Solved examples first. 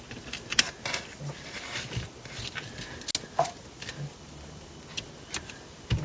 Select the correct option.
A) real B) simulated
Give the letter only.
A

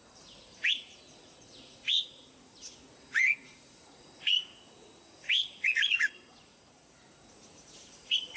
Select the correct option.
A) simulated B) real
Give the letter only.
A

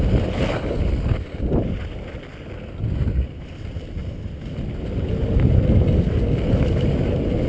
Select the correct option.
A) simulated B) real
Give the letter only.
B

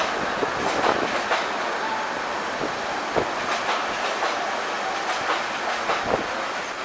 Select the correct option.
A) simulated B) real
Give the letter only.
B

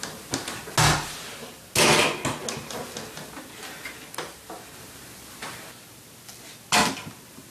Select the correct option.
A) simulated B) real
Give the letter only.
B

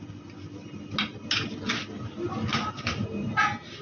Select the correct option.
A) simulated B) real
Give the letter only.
B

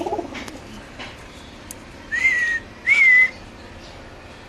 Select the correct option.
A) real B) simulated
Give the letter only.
A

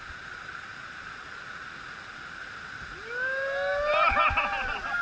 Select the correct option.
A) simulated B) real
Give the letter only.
B